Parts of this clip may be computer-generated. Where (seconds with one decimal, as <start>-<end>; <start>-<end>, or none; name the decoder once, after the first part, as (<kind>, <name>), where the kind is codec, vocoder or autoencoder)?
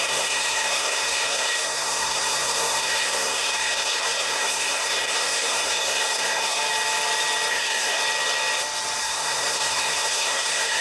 0.0-6.6 (codec, SNAC); 7.5-8.0; 9.0-10.8